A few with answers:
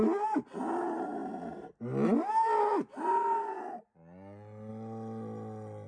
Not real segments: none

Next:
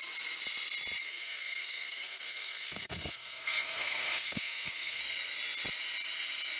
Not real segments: 1.0-5.0 (codec, SNAC)